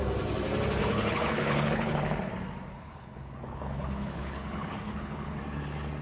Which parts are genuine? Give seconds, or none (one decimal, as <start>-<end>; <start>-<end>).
0.0-0.8; 2.3-2.7; 5.4-6.0